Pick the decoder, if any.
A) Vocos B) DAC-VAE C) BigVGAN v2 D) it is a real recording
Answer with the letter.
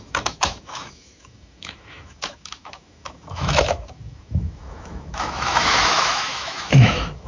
B